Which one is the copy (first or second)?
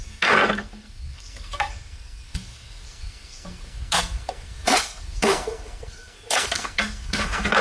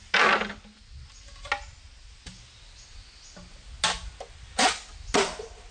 first